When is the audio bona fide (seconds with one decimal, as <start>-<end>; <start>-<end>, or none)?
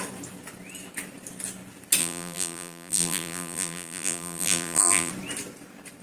0.0-2.0; 5.1-6.0